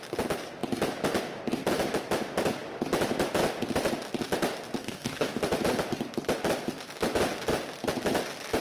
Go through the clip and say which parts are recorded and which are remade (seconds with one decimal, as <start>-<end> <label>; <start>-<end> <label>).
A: 0.0-4.8 recorded; 4.8-5.4 remade; 5.4-8.6 recorded